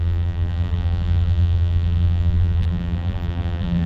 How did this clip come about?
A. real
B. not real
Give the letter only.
B